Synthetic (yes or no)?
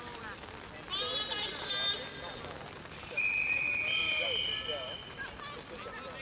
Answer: no